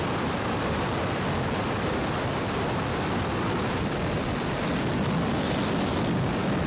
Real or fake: real